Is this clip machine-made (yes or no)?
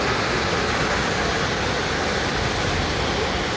no